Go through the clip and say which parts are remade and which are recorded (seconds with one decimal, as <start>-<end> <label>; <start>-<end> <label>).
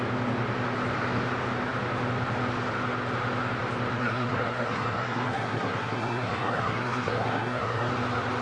0.0-3.9 recorded; 3.9-7.9 remade; 7.9-8.4 recorded